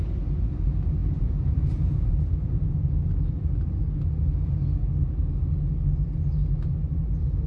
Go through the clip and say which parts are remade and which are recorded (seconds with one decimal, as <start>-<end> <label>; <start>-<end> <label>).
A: 0.0-1.0 recorded; 1.0-2.6 remade; 2.6-7.5 recorded